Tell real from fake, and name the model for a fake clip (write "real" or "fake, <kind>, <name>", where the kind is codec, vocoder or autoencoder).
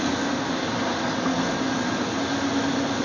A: real